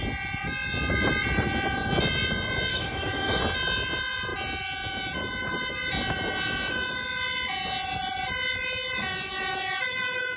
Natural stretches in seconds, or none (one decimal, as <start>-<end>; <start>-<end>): 0.0-2.7; 3.4-10.4